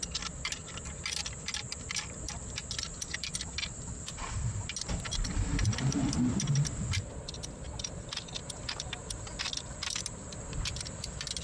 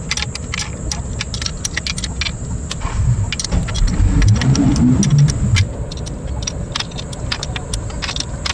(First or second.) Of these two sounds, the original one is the second